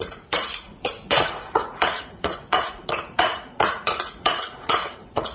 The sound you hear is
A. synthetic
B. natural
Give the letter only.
A